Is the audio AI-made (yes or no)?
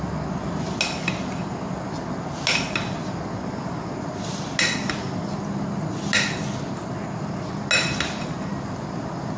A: no